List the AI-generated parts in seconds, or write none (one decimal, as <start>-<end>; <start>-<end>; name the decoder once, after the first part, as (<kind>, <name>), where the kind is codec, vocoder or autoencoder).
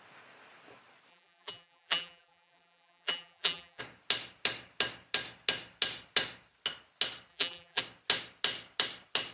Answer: 1.1-3.8 (vocoder, BigVGAN v2); 7.3-7.8